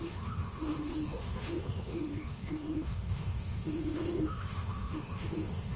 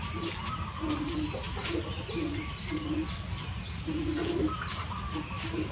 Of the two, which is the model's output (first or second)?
first